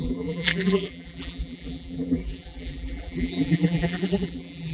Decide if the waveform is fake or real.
fake